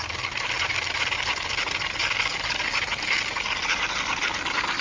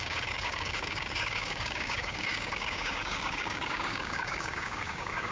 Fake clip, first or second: second